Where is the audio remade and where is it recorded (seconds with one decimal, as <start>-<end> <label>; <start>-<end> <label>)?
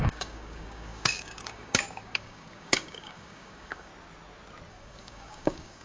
0.0-3.9 remade; 3.9-4.7 recorded; 4.7-5.8 remade